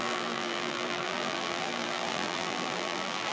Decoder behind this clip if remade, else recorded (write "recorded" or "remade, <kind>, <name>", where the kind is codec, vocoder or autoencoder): remade, vocoder, BigVGAN v2